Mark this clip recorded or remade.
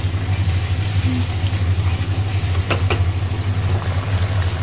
recorded